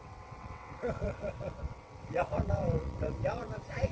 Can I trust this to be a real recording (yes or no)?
no